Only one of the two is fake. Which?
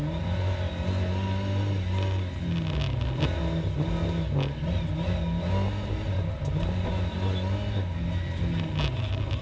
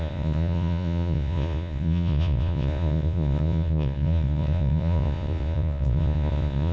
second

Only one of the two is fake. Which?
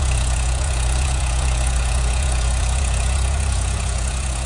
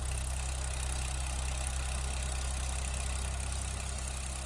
first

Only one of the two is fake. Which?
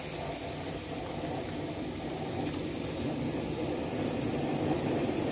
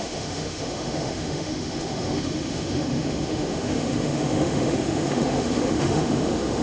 second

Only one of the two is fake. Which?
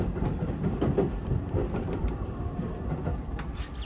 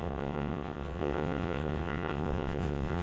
second